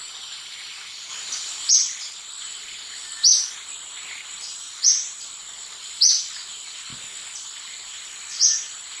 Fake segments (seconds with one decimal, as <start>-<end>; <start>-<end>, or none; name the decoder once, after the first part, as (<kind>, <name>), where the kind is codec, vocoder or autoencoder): none